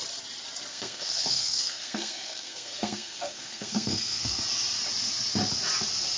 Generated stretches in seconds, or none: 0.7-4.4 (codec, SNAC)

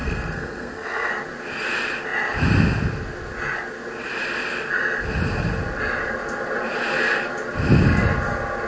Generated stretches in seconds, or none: 0.0-1.1 (codec, SNAC)